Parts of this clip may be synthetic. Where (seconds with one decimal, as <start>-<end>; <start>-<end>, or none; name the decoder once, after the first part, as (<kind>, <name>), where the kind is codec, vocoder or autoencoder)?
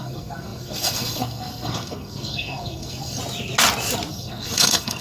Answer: 0.0-3.2 (codec, SNAC); 4.1-5.0